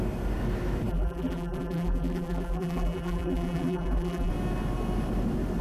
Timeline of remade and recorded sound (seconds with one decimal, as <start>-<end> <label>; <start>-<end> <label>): 0.0-0.9 recorded; 0.9-4.3 remade; 4.3-5.6 recorded